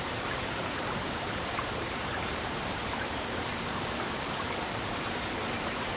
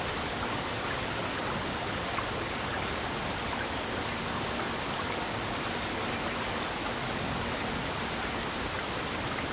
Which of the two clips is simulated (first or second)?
first